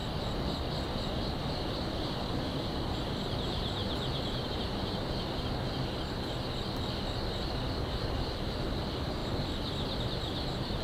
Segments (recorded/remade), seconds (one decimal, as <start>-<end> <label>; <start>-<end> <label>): 0.0-1.0 recorded; 1.0-3.8 remade; 3.8-8.0 recorded; 8.0-9.2 remade; 9.2-10.0 recorded; 10.0-10.8 remade